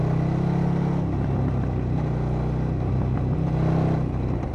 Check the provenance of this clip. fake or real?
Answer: real